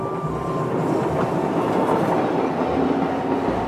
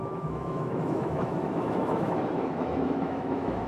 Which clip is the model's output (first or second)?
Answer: second